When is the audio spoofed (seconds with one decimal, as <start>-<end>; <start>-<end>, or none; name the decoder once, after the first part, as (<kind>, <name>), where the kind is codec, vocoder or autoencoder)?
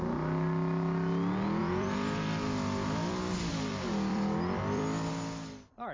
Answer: 1.6-5.1 (vocoder, BigVGAN v2)